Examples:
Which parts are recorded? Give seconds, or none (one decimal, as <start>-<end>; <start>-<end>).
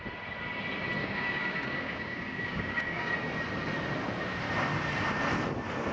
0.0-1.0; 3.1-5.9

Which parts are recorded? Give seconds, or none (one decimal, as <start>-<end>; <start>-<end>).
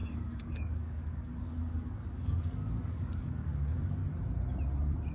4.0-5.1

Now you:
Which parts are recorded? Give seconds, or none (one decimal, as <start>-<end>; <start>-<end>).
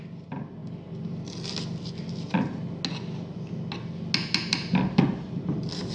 0.0-5.9